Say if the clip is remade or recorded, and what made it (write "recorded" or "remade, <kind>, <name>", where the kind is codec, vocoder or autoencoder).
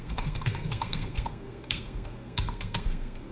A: remade, codec, SNAC